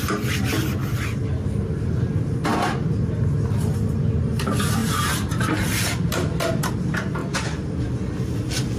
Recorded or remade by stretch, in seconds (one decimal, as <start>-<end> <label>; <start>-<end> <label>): 0.0-4.8 recorded; 4.8-6.6 remade; 6.6-8.8 recorded